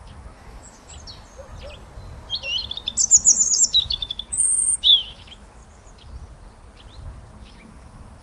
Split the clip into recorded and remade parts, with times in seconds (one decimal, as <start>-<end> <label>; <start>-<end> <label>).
0.0-0.9 remade; 0.9-3.0 recorded; 3.0-5.6 remade; 5.6-7.4 recorded; 7.4-8.2 remade